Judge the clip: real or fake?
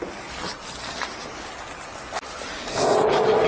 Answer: real